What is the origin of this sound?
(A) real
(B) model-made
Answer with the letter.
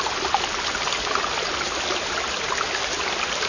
A